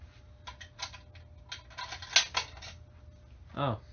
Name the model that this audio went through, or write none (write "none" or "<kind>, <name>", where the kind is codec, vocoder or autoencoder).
none